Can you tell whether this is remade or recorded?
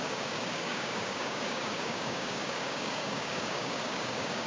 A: remade